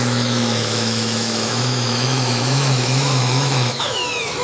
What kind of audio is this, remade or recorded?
remade